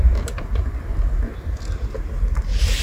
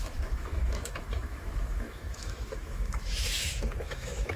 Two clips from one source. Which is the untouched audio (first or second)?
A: first